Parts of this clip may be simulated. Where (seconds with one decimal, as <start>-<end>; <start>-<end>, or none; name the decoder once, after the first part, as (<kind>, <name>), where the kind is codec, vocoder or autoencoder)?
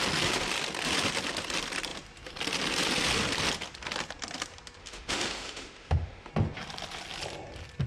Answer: 4.8-6.3 (autoencoder, DAC-VAE)